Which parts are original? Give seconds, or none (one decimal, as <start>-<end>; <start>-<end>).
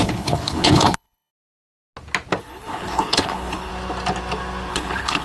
1.3-2.4; 3.7-4.7